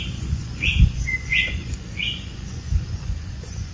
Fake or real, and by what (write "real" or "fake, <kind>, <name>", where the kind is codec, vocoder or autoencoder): fake, vocoder, Vocos